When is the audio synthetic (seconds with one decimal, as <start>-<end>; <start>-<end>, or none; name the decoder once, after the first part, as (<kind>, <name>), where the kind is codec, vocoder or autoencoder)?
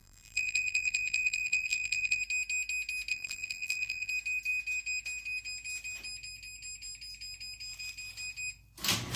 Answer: 0.0-2.2 (vocoder, BigVGAN v2); 3.1-4.1